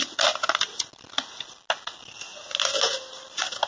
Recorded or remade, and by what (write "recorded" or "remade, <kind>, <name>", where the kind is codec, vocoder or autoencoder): recorded